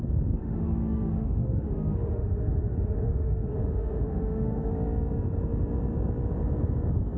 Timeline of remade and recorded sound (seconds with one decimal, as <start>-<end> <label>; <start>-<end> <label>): 0.0-0.4 recorded; 0.4-4.7 remade; 4.7-7.2 recorded